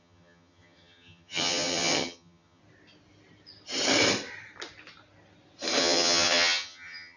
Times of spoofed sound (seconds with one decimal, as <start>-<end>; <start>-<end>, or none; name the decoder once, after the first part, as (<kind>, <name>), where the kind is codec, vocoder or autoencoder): 0.0-2.6 (vocoder, HiFi-GAN); 5.8-7.2